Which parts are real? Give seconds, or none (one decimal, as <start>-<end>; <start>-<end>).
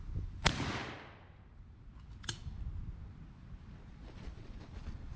0.0-3.8